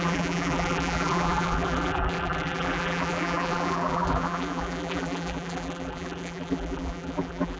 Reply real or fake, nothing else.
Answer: fake